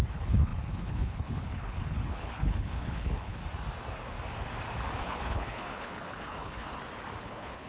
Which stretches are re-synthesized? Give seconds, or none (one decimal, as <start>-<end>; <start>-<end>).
0.0-3.4; 5.0-6.7; 7.2-7.7